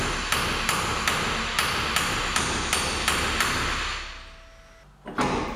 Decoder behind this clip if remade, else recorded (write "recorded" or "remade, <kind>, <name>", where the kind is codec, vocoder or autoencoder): recorded